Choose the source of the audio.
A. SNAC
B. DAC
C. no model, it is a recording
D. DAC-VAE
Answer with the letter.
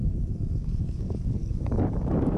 B